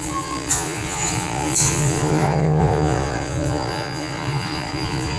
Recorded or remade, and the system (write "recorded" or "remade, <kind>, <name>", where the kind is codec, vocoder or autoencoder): remade, vocoder, Vocos